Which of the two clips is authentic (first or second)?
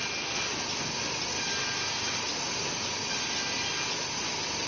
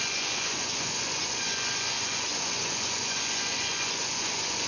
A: first